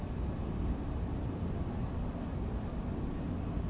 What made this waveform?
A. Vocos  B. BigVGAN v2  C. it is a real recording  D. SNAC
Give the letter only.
C